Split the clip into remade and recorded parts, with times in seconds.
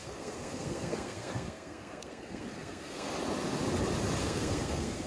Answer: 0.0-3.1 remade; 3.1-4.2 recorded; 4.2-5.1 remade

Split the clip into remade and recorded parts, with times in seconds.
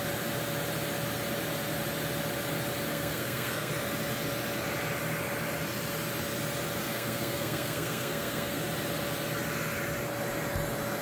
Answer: 0.0-2.9 recorded; 2.9-3.7 remade; 3.7-6.8 recorded; 6.8-8.6 remade; 8.6-11.0 recorded